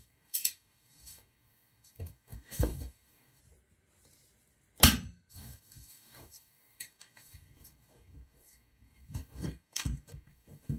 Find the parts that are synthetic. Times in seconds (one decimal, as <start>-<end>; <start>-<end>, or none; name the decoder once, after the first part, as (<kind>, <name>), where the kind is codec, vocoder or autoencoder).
0.0-3.4 (codec, DAC); 5.3-10.8